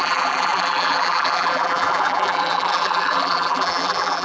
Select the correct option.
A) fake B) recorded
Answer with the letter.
A